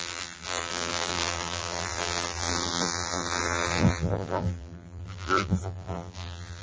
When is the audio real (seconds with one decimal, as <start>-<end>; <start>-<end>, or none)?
none